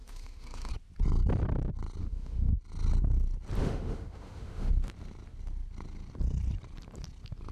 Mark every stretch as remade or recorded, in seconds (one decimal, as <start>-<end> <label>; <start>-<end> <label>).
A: 0.0-0.7 remade; 0.7-2.0 recorded; 2.0-2.6 remade; 2.6-3.6 recorded; 3.6-4.7 remade; 4.7-7.5 recorded